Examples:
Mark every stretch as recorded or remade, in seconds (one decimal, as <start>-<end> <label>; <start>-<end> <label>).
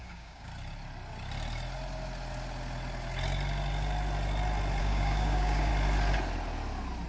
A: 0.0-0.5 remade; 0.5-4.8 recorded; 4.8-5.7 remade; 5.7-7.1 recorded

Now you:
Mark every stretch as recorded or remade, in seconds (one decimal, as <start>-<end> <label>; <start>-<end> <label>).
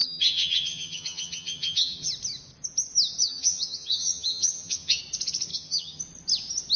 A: 0.0-2.1 remade; 2.1-3.2 recorded; 3.2-5.0 remade; 5.0-5.5 recorded; 5.5-6.0 remade; 6.0-6.8 recorded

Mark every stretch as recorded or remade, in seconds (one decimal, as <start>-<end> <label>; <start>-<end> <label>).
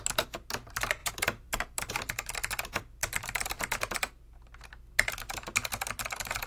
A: 0.0-1.0 recorded; 1.0-2.0 remade; 2.0-3.0 recorded; 3.0-4.1 remade; 4.1-6.5 recorded